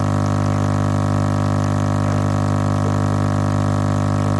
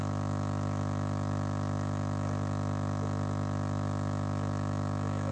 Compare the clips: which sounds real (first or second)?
first